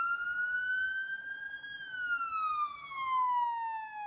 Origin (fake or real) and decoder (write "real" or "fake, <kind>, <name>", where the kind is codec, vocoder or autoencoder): real